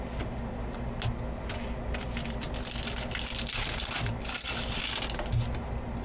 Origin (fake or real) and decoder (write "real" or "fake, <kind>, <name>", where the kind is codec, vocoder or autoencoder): real